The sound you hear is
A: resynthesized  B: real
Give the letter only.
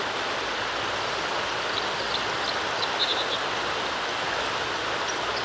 B